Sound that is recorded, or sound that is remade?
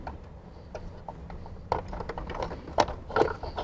recorded